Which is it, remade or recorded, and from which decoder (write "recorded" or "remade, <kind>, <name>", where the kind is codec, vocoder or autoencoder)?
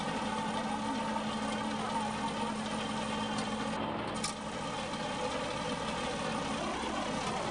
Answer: recorded